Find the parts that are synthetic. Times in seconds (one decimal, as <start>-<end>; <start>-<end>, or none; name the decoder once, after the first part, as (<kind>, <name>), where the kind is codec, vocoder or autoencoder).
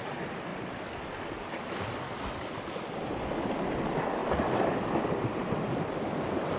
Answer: none